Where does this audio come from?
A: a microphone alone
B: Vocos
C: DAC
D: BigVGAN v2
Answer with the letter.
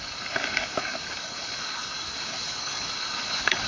C